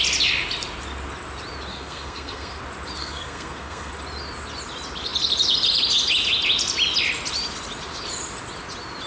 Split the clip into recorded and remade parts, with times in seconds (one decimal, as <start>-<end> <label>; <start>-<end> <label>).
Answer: 0.0-1.7 recorded; 1.7-2.6 remade; 2.6-3.0 recorded; 3.0-3.9 remade; 3.9-9.1 recorded